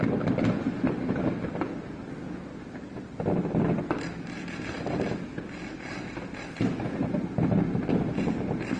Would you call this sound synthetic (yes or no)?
no